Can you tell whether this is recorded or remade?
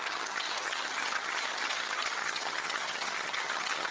remade